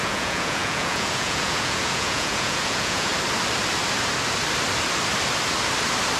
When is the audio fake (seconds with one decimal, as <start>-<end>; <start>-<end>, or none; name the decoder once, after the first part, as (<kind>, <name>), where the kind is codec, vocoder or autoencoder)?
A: 0.0-3.1 (vocoder, Vocos)